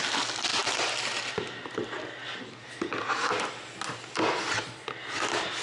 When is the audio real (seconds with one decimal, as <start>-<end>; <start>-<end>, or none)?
0.0-5.6